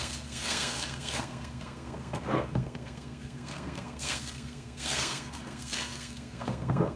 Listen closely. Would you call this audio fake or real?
fake